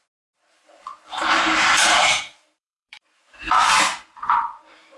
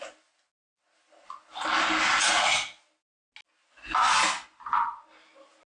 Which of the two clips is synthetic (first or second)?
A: first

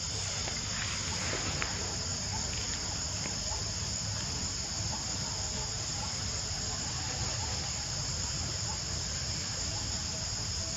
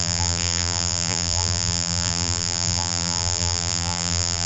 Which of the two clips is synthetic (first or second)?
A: second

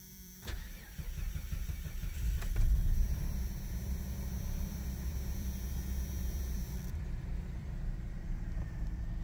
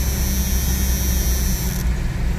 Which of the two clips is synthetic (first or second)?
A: first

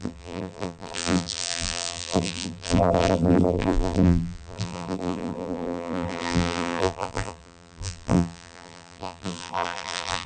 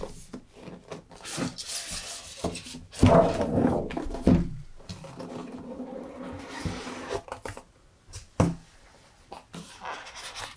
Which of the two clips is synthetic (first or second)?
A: first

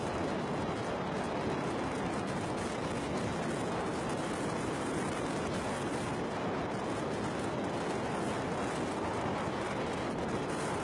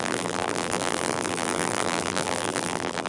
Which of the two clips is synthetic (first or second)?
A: second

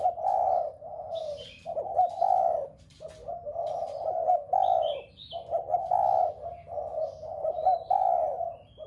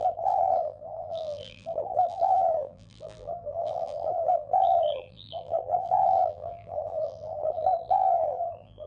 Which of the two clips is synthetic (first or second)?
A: second